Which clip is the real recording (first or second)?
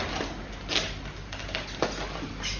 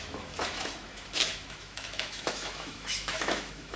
first